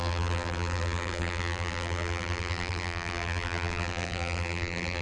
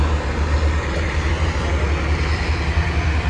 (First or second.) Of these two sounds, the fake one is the first